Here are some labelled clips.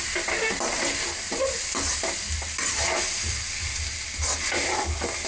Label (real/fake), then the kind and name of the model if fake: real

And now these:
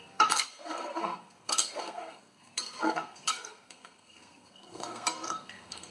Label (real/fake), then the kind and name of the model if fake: fake, codec, SNAC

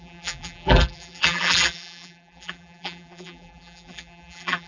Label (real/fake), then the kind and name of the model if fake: fake, vocoder, BigVGAN v2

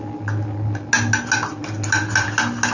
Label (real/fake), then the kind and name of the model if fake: real